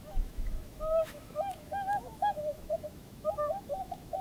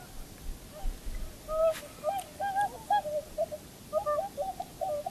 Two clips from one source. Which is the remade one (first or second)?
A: first